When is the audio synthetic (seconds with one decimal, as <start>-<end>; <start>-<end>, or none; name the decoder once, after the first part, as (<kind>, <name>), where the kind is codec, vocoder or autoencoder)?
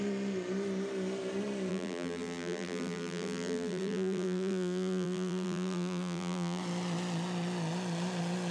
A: 1.7-6.6 (vocoder, BigVGAN v2)